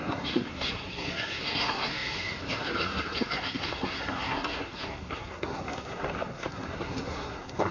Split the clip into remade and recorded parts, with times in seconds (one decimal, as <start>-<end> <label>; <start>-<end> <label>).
0.0-7.7 remade